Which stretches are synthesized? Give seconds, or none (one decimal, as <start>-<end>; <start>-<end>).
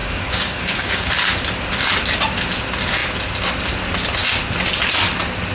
0.0-1.1